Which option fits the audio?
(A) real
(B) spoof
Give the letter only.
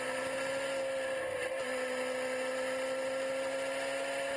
A